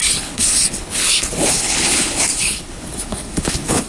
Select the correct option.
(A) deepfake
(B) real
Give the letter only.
A